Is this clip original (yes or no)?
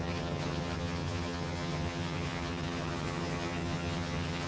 no